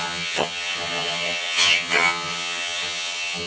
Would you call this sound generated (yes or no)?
yes